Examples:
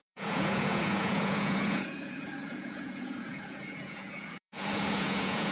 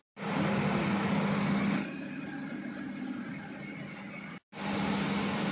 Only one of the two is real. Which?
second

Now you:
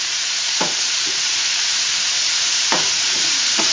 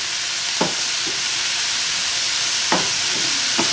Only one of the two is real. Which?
second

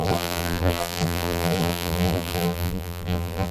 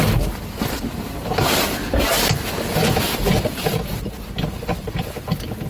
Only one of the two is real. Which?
second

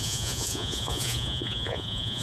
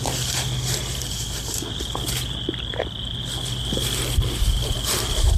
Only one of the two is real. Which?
second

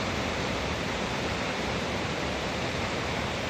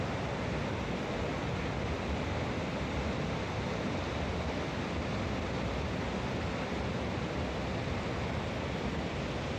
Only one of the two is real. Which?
second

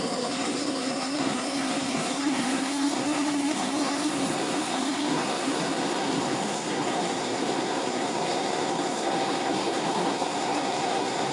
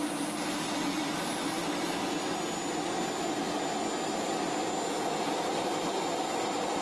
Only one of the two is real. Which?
second